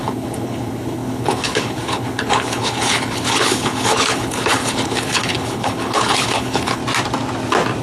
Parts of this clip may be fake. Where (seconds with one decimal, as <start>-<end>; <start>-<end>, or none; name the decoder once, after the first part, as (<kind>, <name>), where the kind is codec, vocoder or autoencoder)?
0.0-6.8 (codec, HILCodec)